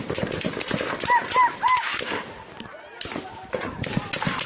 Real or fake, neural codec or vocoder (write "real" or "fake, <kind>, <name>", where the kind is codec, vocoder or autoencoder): real